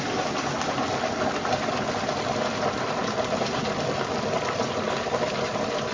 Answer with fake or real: real